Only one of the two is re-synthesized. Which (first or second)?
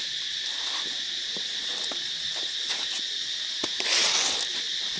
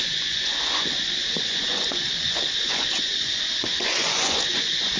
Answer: second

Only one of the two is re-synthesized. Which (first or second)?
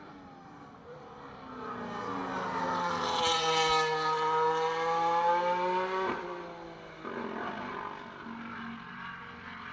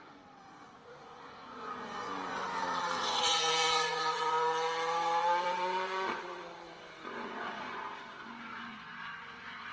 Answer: second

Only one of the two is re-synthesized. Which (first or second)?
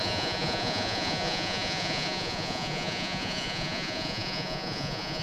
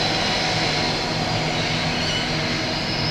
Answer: first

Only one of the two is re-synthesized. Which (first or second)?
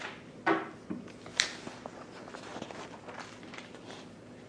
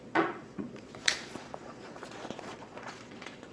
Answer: second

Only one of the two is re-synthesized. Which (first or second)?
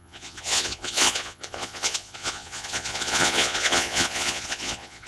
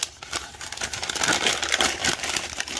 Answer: first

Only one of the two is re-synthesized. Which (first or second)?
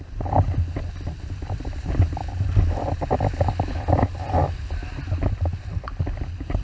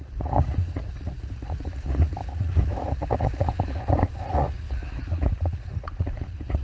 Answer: second